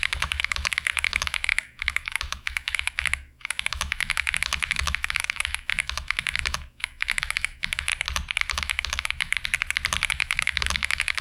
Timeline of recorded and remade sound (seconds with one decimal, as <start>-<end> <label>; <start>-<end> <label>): 0.0-7.9 remade; 7.9-8.5 recorded; 8.5-9.3 remade; 9.3-10.1 recorded; 10.1-11.2 remade